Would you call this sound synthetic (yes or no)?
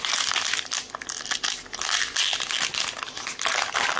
no